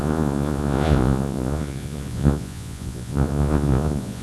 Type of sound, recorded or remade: remade